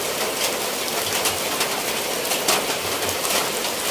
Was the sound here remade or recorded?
recorded